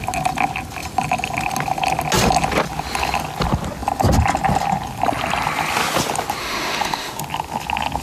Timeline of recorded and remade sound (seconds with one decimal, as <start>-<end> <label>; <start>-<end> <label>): 0.0-6.4 recorded; 6.4-7.2 remade; 7.2-8.0 recorded